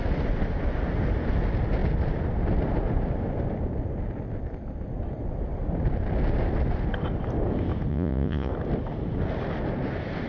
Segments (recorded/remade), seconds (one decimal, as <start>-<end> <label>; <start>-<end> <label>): 0.0-7.9 recorded; 7.9-8.5 remade; 8.5-10.3 recorded